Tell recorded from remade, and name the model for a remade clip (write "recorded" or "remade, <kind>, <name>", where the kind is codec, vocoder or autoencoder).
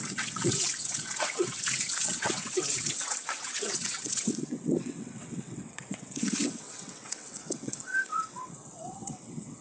remade, vocoder, WaveNeXt